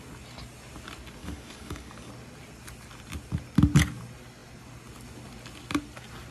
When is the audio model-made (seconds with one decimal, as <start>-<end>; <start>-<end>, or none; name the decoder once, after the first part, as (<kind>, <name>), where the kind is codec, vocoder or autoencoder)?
1.2-2.1 (codec, DAC)